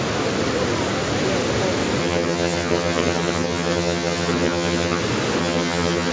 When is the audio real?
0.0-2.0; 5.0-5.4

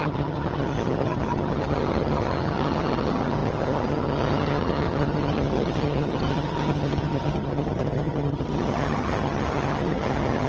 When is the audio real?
none

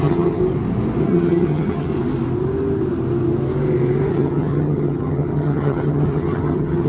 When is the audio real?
0.4-1.0; 1.9-4.1

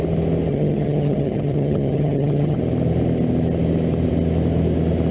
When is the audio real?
0.0-0.5; 2.6-5.1